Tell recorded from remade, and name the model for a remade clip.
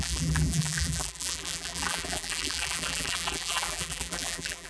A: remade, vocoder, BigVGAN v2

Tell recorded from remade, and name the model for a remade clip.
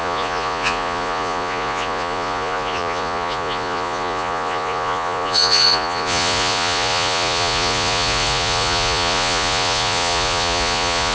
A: remade, vocoder, Vocos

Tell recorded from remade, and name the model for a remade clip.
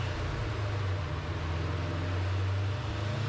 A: recorded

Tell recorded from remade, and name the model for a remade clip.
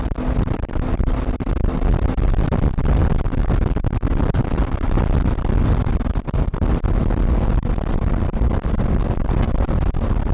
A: recorded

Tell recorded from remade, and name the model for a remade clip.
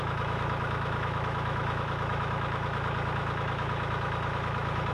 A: remade, autoencoder, DAC-VAE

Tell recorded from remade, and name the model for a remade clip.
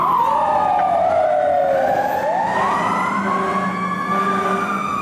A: recorded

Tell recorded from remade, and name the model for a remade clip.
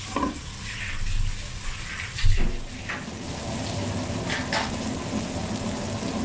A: recorded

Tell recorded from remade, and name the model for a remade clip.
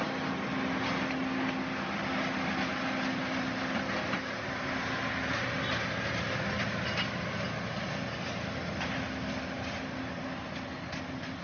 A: recorded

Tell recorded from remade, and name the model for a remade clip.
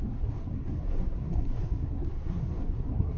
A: remade, codec, SNAC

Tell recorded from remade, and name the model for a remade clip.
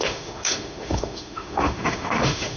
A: remade, autoencoder, DAC-VAE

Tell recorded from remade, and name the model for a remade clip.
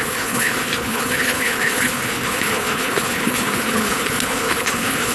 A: remade, codec, HILCodec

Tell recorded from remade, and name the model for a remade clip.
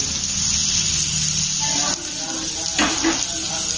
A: recorded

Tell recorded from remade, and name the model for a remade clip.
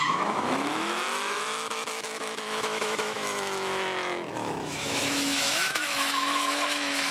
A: remade, autoencoder, DAC-VAE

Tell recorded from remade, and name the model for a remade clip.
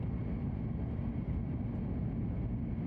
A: recorded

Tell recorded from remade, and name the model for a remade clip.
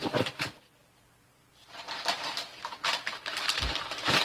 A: remade, vocoder, BigVGAN v2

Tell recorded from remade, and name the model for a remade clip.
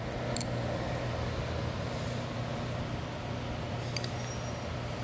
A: recorded